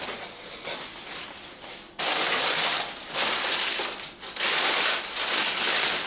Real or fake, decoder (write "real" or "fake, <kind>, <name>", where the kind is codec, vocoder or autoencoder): real